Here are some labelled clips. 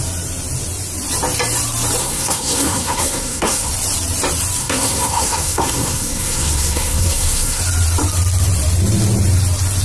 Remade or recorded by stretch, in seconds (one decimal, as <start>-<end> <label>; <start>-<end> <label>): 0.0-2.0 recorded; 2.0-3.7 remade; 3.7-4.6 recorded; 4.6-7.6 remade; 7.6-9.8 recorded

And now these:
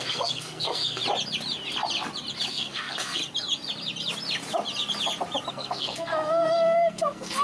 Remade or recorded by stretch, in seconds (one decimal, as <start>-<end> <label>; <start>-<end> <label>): 0.0-1.0 remade; 1.0-2.5 recorded; 2.5-3.2 remade; 3.2-5.5 recorded; 5.5-7.4 remade

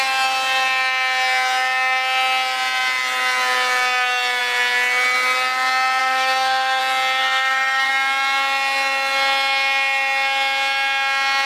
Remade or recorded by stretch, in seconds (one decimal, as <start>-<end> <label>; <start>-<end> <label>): 0.0-6.0 recorded; 6.0-6.8 remade; 6.8-7.2 recorded; 7.2-7.9 remade; 7.9-11.5 recorded

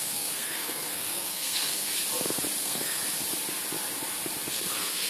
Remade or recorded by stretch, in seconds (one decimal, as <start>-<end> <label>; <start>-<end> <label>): 0.0-1.9 remade; 1.9-2.6 recorded; 2.6-3.0 remade; 3.0-4.5 recorded; 4.5-5.1 remade